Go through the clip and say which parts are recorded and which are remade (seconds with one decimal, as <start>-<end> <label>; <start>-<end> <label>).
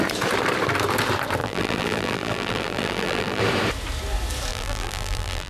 0.0-1.4 recorded; 1.4-3.4 remade; 3.4-4.5 recorded; 4.5-5.5 remade